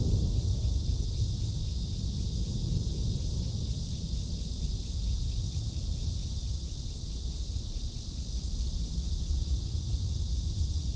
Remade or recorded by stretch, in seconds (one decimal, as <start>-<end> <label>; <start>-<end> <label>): 0.0-11.0 recorded